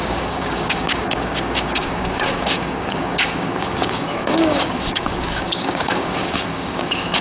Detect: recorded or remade remade